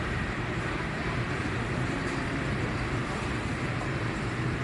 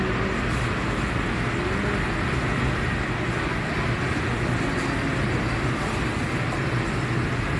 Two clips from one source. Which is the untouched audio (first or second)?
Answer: second